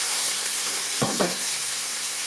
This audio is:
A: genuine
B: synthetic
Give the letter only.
B